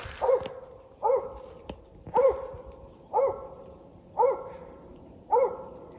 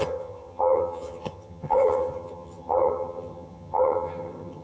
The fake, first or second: second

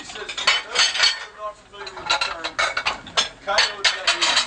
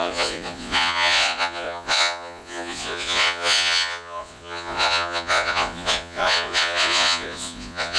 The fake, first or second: second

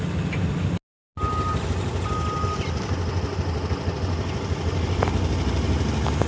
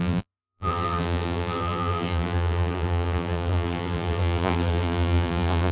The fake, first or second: second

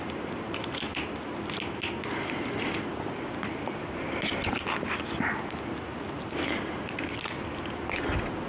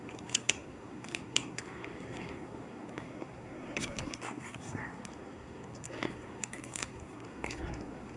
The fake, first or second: second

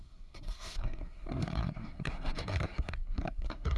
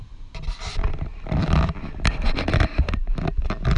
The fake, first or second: first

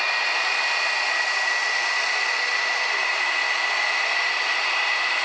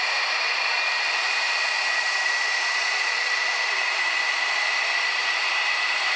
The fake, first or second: second